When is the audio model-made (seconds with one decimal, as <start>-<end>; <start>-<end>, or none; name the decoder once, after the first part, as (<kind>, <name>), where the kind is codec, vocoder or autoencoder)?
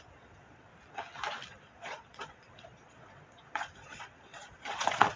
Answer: 0.0-0.7 (vocoder, Vocos); 1.5-5.2